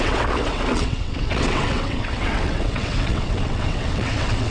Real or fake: fake